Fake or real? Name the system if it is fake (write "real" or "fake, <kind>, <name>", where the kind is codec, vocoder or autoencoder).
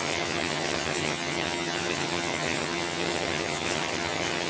fake, vocoder, HiFi-GAN